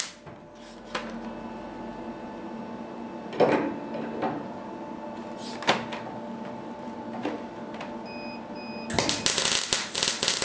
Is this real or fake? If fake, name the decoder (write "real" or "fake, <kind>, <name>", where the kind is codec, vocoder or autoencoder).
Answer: real